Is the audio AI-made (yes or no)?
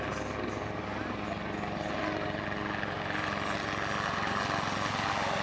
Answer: no